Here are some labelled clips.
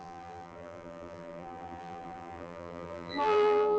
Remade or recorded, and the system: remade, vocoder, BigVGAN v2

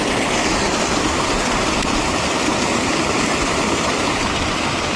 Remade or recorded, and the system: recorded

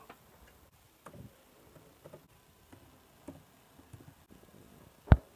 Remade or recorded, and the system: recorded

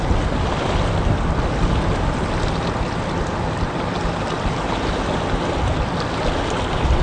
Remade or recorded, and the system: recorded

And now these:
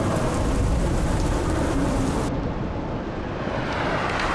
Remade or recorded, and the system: recorded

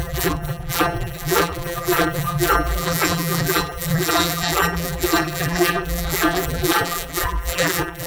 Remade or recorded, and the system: remade, vocoder, BigVGAN v2